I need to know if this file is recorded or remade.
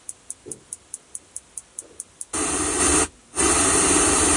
recorded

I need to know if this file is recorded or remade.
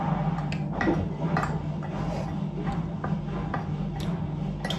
recorded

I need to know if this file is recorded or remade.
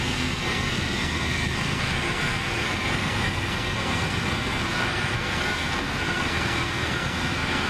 remade